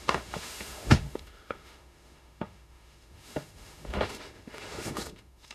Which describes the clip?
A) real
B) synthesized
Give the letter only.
B